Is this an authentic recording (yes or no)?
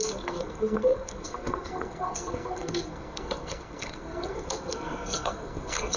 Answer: no